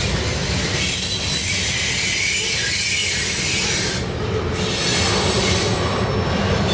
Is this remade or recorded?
recorded